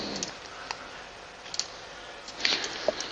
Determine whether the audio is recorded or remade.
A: recorded